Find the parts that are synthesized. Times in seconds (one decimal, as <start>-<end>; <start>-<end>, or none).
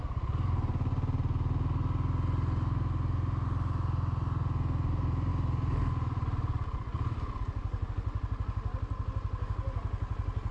5.3-7.9